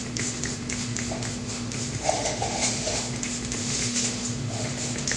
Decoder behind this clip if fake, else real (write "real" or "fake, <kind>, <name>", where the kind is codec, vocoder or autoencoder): fake, autoencoder, DAC-VAE